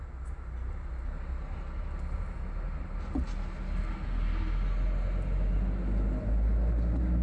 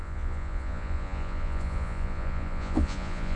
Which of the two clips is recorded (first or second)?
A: first